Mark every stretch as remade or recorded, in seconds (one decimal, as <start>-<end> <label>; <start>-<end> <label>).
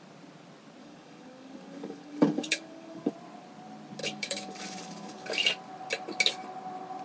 0.0-0.8 recorded; 0.8-3.1 remade; 3.1-4.0 recorded; 4.0-5.5 remade; 5.5-7.0 recorded